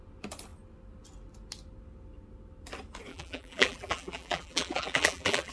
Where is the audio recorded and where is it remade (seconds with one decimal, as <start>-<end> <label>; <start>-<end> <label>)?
0.0-3.1 recorded; 3.1-5.5 remade